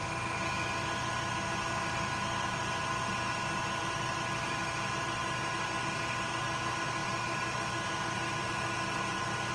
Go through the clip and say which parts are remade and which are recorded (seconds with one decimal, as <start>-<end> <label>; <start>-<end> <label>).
0.0-9.5 recorded